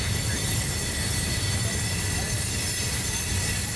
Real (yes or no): yes